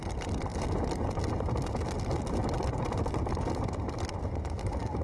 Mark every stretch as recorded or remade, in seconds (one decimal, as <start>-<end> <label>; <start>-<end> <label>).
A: 0.0-5.0 recorded